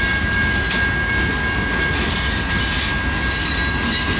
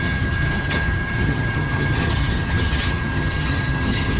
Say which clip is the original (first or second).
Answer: first